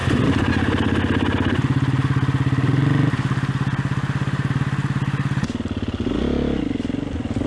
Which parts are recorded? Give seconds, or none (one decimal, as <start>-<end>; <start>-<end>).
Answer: 0.0-7.5